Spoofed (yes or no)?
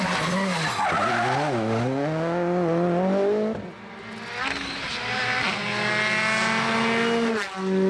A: no